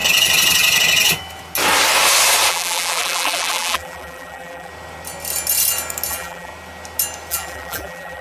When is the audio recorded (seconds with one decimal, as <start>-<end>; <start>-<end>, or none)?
0.0-2.5; 4.7-6.1; 6.5-7.3